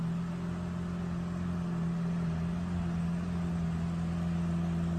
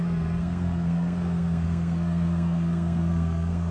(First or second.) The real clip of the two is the first